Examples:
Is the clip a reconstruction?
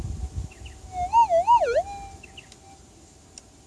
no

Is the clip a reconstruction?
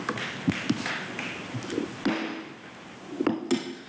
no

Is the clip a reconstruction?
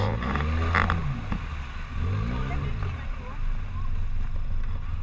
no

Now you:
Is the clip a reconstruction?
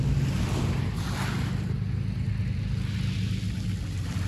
no